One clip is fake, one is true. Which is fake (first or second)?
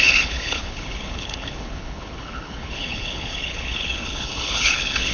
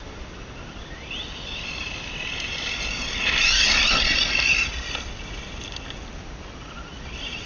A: first